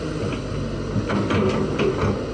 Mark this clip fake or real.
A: real